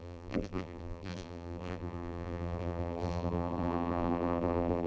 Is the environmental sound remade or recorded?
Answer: remade